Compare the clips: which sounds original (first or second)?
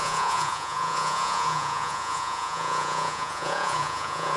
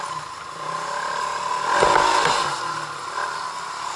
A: second